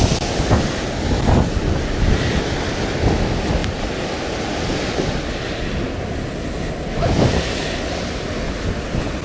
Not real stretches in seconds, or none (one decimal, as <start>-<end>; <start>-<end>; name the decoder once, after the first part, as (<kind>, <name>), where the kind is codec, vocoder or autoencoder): none